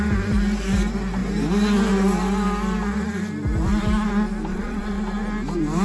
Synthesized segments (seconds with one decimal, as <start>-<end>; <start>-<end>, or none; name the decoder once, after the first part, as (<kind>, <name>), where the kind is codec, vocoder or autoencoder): 4.5-5.0 (vocoder, WaveNeXt)